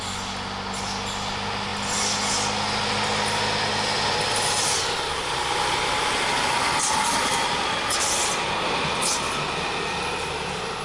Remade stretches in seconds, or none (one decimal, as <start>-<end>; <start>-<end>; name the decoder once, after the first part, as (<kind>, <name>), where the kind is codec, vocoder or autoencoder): none